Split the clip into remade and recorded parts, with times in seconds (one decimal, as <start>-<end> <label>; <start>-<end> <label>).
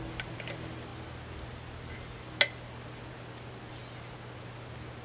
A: 0.0-5.0 recorded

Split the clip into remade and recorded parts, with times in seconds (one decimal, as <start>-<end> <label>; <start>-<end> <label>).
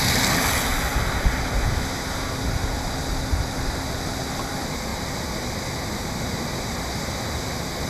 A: 0.0-7.9 recorded